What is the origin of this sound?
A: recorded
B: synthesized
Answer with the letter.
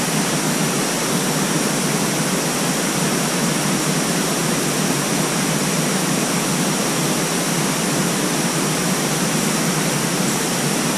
A